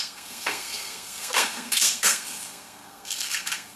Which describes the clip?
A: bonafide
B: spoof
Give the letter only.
B